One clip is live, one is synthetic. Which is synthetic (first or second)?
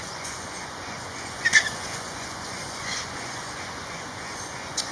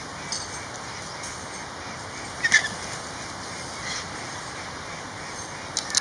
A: first